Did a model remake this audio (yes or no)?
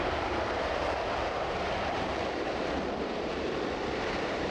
yes